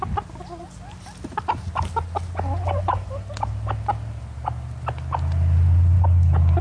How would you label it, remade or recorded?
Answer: recorded